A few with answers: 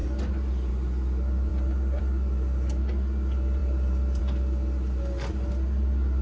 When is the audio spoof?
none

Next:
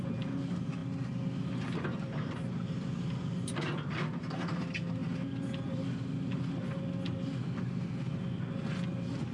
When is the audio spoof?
none